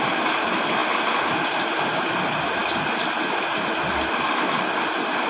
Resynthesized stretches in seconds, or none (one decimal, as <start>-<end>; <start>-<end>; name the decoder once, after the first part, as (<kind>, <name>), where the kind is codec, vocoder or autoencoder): none